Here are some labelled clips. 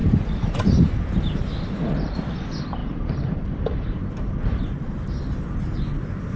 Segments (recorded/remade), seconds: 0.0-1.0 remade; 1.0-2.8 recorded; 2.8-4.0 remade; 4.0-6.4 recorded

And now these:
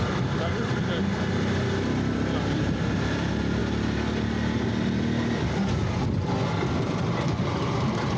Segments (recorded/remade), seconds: 0.0-8.2 recorded

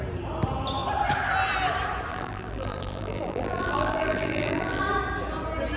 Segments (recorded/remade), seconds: 0.0-2.1 recorded; 2.1-4.8 remade; 4.8-5.8 recorded

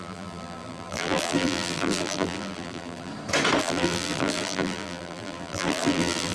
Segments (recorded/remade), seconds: 0.0-3.1 remade; 3.1-3.6 recorded; 3.6-6.3 remade

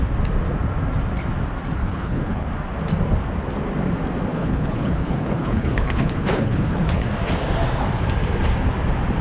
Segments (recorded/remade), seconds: 0.0-1.8 recorded; 1.8-2.5 remade; 2.5-4.3 recorded; 4.3-7.1 remade; 7.1-9.2 recorded

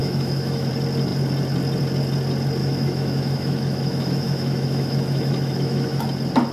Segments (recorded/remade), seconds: 0.0-0.7 remade; 0.7-2.6 recorded; 2.6-6.0 remade; 6.0-6.5 recorded